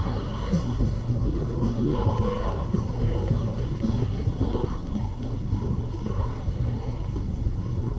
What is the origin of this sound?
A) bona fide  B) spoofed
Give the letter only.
B